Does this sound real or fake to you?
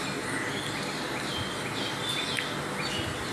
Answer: real